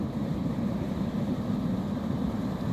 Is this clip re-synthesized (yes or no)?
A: no